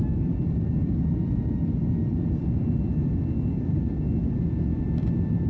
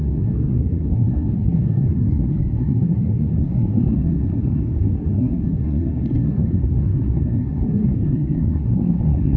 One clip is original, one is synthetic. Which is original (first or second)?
first